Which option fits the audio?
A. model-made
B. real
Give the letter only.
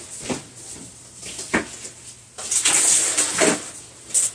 B